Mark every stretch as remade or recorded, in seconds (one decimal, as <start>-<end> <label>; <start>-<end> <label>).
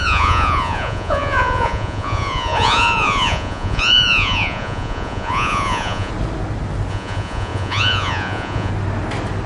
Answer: 0.0-6.1 remade; 6.1-6.9 recorded; 6.9-8.7 remade; 8.7-9.5 recorded